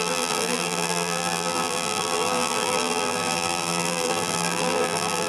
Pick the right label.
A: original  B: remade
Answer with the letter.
B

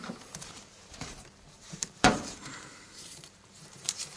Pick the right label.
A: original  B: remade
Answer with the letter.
B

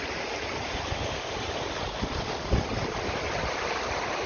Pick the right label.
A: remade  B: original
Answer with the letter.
A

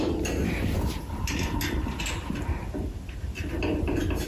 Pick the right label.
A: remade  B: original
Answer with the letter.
B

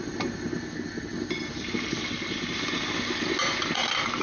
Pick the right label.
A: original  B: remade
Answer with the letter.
A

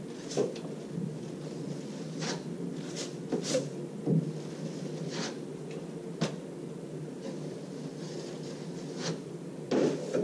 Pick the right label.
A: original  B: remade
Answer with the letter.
A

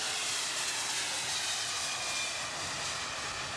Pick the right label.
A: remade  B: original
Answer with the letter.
B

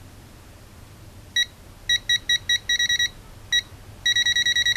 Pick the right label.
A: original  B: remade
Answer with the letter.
A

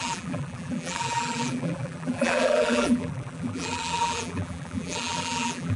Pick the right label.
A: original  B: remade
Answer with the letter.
B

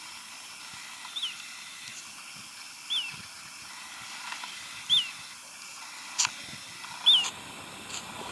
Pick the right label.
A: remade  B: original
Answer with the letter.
B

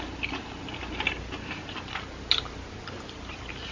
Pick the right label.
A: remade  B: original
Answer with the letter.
B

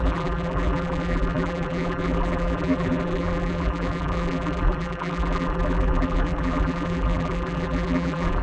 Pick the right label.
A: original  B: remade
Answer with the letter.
B